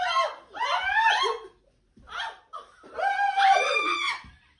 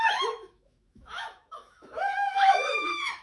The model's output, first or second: second